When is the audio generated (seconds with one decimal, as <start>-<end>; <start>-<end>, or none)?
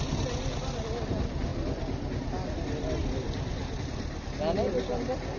none